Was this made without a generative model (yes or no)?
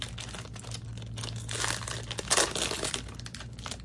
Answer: yes